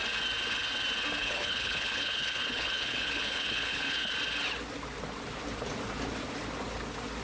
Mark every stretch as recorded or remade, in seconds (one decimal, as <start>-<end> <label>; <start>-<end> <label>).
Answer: 0.0-1.2 recorded; 1.2-4.1 remade; 4.1-7.2 recorded